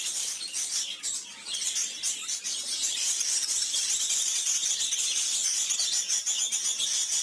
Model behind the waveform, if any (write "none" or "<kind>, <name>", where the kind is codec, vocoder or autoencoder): none